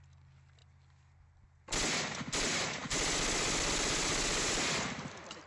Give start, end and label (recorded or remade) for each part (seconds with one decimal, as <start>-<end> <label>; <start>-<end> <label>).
0.0-5.5 recorded